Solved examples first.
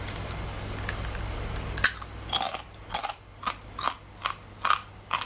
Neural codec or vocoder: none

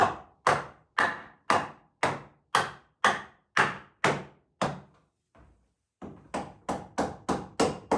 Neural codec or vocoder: none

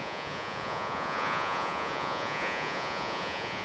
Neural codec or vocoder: vocoder, Vocos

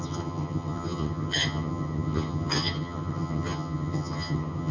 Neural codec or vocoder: vocoder, HiFi-GAN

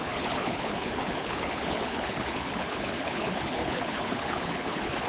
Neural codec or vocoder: codec, HILCodec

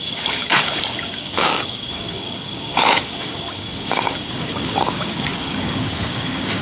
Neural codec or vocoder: codec, DAC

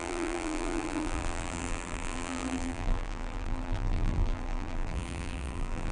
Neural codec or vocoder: vocoder, BigVGAN v2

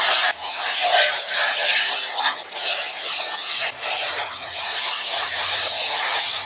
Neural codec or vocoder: none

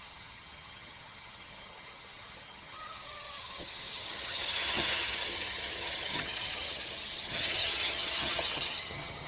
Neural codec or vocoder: vocoder, HiFi-GAN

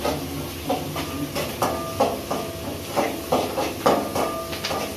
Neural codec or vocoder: none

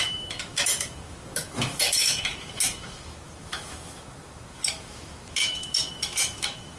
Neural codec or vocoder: autoencoder, DAC-VAE